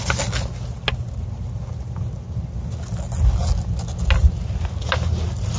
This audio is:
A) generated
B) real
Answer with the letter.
B